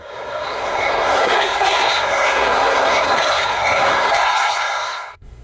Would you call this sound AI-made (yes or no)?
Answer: yes